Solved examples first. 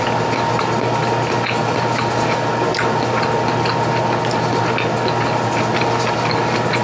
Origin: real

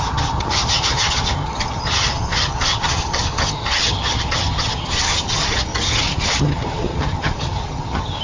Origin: fake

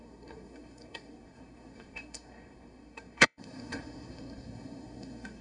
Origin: fake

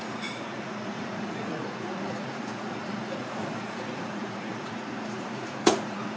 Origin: fake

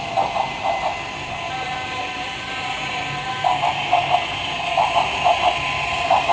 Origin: real